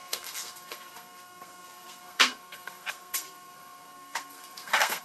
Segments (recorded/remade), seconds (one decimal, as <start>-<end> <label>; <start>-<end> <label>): 0.0-5.0 remade